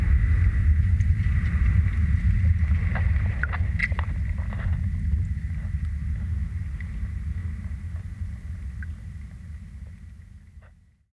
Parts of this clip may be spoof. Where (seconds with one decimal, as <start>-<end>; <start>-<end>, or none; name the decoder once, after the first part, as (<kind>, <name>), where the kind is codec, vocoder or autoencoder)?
none